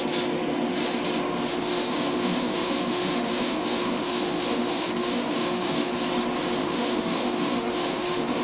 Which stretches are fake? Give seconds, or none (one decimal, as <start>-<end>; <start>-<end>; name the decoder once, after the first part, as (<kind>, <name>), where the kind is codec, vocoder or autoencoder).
1.5-6.0 (autoencoder, DAC-VAE); 6.6-8.4